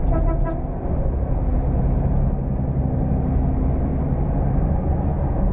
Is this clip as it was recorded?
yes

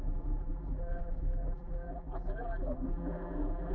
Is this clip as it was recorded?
no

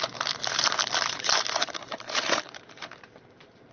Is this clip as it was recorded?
no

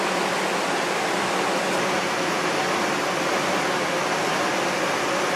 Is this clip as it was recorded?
yes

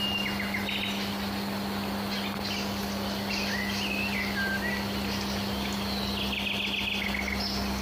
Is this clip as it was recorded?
yes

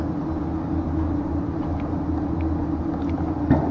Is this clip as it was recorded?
yes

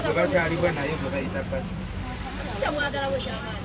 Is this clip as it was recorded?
no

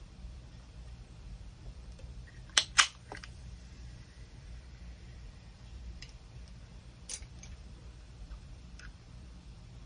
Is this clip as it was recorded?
no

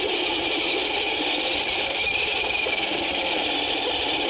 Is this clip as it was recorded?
no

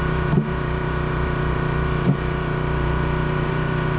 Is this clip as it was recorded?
no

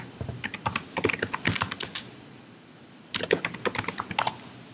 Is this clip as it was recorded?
yes